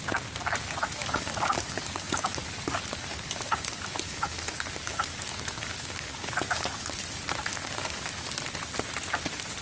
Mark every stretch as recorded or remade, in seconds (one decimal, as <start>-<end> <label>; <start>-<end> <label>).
0.0-1.0 recorded; 1.0-2.4 remade; 2.4-2.9 recorded; 2.9-7.0 remade; 7.0-7.5 recorded; 7.5-8.3 remade; 8.3-9.6 recorded